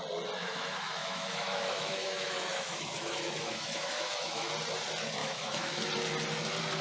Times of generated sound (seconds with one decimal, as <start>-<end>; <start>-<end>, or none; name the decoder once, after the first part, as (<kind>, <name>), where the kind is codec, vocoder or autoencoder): 0.4-4.5 (autoencoder, DAC-VAE); 5.2-5.9

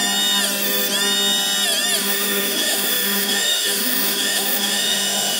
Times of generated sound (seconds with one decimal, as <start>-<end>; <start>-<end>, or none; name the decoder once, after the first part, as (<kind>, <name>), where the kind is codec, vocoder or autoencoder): 2.0-5.4 (autoencoder, DAC-VAE)

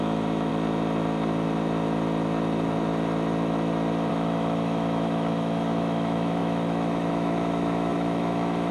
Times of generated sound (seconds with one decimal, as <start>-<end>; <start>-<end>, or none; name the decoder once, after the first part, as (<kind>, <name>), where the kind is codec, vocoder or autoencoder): 0.0-0.5 (autoencoder, DAC-VAE); 4.1-8.7

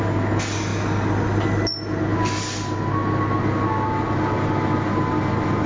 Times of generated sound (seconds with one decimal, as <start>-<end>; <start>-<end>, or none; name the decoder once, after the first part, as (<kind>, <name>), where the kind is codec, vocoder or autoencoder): none